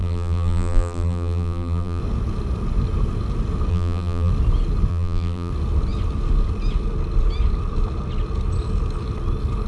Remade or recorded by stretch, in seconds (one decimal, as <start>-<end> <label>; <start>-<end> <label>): 0.0-2.0 remade; 2.0-3.7 recorded; 3.7-4.3 remade; 4.3-4.9 recorded; 4.9-5.5 remade; 5.5-9.7 recorded